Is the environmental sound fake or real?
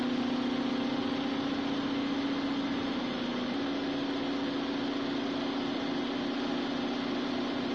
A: real